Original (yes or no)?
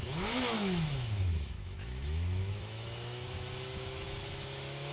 no